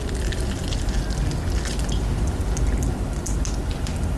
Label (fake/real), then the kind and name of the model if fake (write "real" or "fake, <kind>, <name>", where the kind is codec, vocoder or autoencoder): real